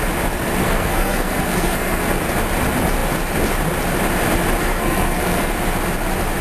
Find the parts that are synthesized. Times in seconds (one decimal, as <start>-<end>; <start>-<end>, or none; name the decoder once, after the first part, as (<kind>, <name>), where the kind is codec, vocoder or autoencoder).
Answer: 0.6-2.0 (codec, SNAC); 4.6-5.5